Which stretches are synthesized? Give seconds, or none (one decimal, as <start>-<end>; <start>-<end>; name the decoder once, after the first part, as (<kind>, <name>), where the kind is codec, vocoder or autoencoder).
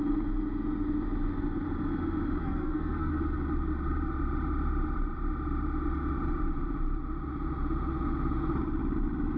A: 2.4-3.1 (codec, SNAC)